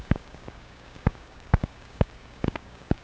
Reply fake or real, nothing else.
fake